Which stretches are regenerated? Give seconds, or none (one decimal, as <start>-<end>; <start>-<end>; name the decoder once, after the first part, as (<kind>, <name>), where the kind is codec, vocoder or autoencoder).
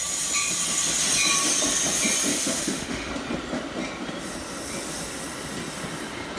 2.3-3.1 (autoencoder, DAC-VAE)